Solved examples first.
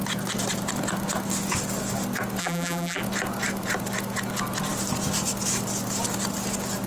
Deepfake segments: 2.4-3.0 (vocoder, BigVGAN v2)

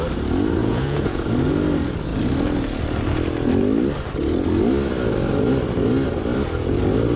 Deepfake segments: 0.6-1.2 (vocoder, Vocos)

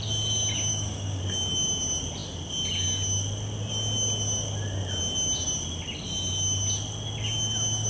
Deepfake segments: 0.7-1.2 (codec, DAC)

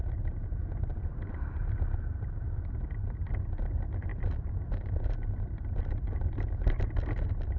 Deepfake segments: 0.9-2.1 (vocoder, BigVGAN v2); 4.1-6.8

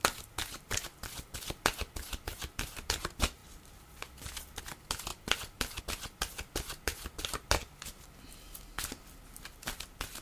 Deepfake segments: 5.1-5.8 (vocoder, BigVGAN v2)